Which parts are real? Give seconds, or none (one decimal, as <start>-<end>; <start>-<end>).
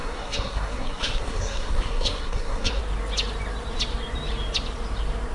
2.8-5.3